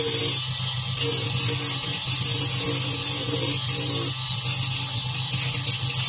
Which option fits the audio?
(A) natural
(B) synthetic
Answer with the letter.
A